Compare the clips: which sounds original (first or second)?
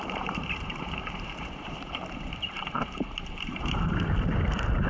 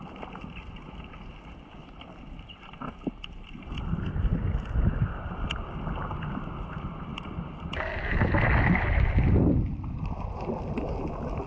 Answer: second